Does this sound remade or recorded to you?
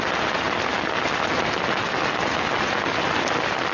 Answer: recorded